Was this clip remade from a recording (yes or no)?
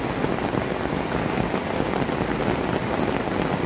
no